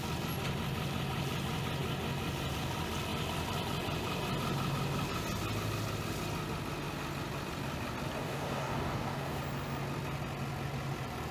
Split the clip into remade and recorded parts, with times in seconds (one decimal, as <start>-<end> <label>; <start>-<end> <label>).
0.0-8.2 recorded; 8.2-9.4 remade; 9.4-11.3 recorded